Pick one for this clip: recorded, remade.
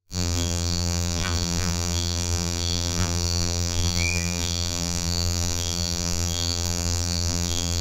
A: remade